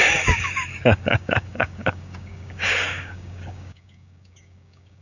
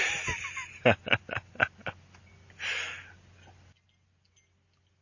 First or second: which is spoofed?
first